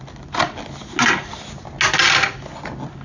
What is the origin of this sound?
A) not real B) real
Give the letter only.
B